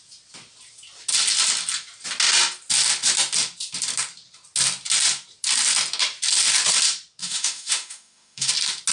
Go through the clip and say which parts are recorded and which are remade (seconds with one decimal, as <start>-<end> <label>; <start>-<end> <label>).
0.0-7.2 recorded; 7.2-8.5 remade; 8.5-8.9 recorded